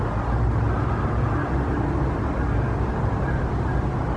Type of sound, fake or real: real